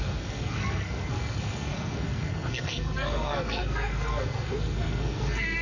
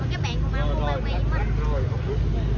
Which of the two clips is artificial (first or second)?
first